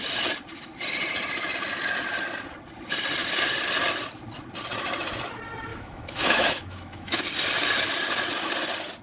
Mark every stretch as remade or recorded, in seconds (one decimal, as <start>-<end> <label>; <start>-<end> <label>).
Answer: 0.0-5.7 recorded; 5.7-7.2 remade; 7.2-9.0 recorded